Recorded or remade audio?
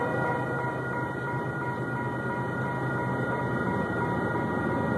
recorded